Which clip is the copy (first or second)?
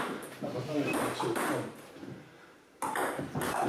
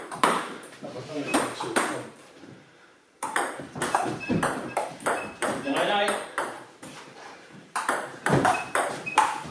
second